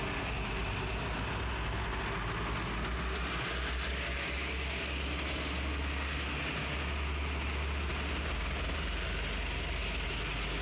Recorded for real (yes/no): yes